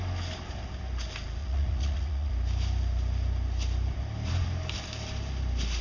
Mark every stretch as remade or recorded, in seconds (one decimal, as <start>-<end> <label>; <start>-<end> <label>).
0.0-1.4 recorded; 1.4-2.3 remade; 2.3-5.8 recorded